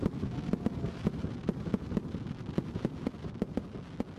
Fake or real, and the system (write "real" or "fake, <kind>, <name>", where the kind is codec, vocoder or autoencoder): real